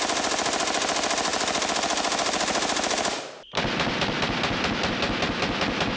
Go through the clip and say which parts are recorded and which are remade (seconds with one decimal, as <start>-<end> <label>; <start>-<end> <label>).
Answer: 0.0-1.3 recorded; 1.3-4.9 remade; 4.9-6.0 recorded